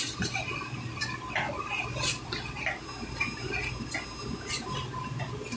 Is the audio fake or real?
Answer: real